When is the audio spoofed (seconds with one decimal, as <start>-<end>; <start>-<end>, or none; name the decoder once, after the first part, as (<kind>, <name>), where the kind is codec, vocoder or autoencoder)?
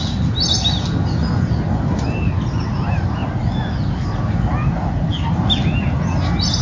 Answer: none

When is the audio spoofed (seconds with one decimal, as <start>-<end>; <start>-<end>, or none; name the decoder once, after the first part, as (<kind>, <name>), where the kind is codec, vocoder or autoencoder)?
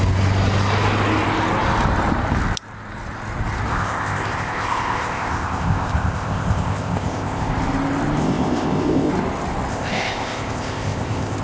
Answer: 3.7-7.5 (codec, ZipCodec); 8.2-9.1; 9.7-11.4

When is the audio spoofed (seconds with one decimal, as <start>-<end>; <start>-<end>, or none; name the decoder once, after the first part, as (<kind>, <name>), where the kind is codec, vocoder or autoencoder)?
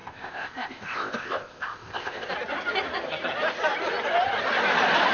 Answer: 0.0-2.3 (codec, ZipCodec)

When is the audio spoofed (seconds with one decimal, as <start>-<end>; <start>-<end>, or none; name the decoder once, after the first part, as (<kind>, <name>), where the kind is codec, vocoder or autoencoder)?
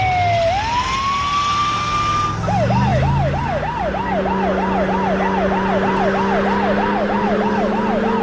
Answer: none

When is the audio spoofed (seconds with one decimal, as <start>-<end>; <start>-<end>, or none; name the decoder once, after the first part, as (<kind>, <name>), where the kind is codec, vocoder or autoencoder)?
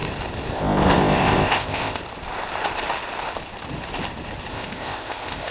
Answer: 0.5-2.0 (codec, ZipCodec); 4.5-5.5